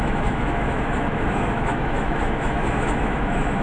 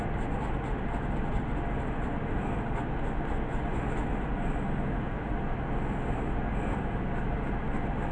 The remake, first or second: first